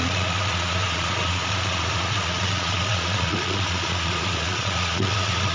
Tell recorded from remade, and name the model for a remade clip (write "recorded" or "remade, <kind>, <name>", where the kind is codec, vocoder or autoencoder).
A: remade, vocoder, Vocos